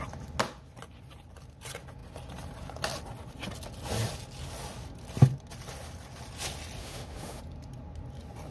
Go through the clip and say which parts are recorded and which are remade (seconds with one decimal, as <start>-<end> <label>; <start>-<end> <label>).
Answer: 0.0-6.8 recorded; 6.8-7.4 remade; 7.4-8.5 recorded